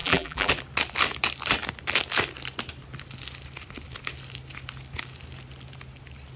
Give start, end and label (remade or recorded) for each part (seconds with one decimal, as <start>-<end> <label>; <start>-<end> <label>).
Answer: 0.0-0.5 remade; 0.5-6.4 recorded